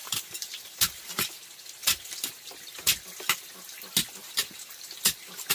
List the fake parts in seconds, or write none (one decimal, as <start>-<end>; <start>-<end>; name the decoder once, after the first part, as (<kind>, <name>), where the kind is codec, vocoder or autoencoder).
0.0-1.3 (vocoder, BigVGAN v2)